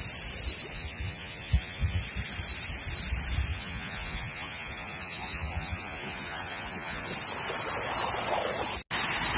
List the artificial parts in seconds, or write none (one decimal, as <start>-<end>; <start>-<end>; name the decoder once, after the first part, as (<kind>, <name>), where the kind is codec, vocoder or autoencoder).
0.7-2.0 (vocoder, Vocos); 3.5-7.1